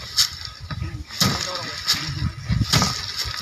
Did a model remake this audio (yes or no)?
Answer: no